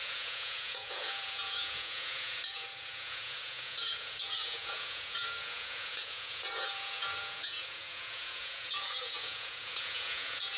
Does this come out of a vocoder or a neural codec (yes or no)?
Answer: yes